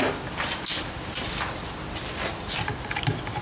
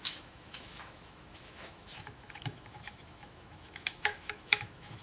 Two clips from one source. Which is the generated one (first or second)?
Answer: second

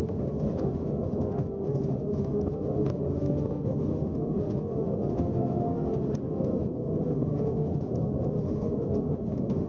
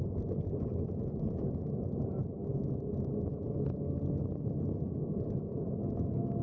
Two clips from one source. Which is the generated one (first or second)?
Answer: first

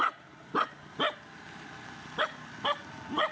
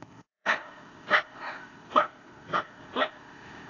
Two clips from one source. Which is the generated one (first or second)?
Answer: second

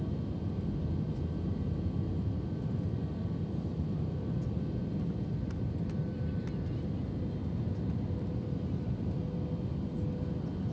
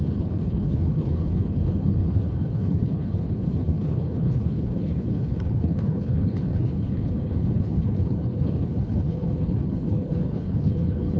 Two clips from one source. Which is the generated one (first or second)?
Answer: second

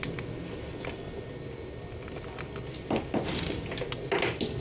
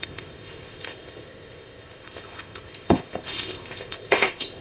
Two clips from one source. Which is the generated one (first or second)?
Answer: second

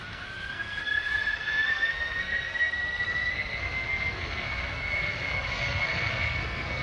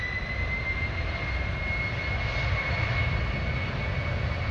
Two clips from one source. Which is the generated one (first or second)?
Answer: first